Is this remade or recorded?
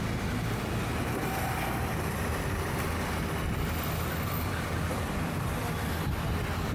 recorded